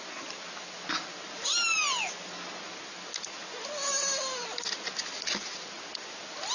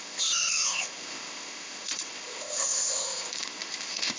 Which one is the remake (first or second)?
second